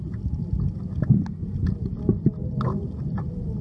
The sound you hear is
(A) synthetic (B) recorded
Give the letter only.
B